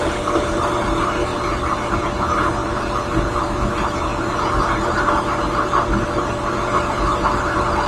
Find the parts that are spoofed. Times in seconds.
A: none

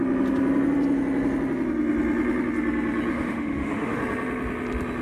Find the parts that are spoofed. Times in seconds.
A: 3.1-4.0 (autoencoder, DAC-VAE)

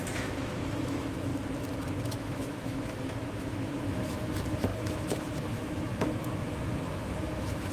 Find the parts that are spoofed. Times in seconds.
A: 0.0-1.3 (autoencoder, DAC-VAE); 2.0-7.7